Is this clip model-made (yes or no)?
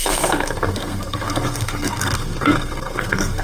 yes